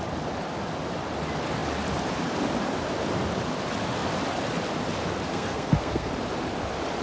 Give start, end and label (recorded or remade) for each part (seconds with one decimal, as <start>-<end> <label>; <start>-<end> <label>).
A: 0.0-5.3 recorded; 5.3-6.1 remade; 6.1-7.0 recorded